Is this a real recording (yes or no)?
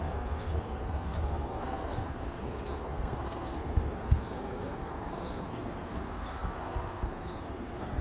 no